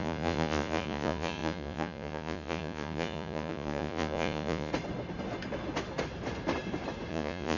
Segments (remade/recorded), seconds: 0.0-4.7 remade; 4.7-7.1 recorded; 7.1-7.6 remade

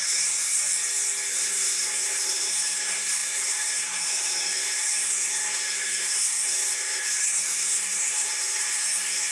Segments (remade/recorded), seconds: 0.0-0.6 remade; 0.6-1.3 recorded; 1.3-9.3 remade